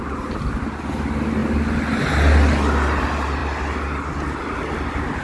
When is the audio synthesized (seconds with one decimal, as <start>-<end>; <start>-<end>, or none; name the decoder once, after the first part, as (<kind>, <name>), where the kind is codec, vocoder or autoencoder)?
none